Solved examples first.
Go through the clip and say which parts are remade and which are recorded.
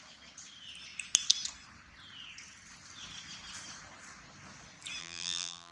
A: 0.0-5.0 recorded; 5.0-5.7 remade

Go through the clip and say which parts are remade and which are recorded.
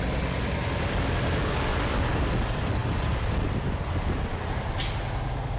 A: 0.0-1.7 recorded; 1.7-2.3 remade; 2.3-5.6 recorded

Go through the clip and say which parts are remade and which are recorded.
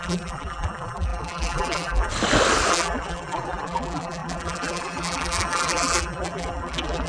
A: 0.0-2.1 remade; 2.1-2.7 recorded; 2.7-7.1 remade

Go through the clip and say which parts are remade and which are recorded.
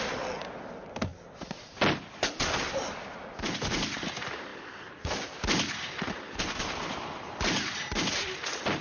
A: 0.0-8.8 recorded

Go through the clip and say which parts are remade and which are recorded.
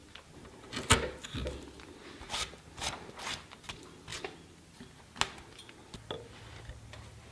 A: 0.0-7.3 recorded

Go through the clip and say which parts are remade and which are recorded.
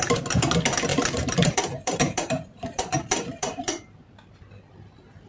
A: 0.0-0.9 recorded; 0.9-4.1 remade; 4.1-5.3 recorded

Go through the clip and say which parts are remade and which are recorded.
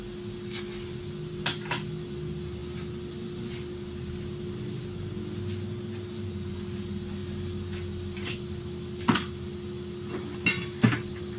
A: 0.0-11.4 recorded